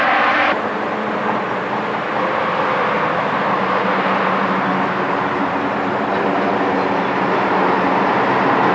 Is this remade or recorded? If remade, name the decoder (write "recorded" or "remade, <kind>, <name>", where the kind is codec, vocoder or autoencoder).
recorded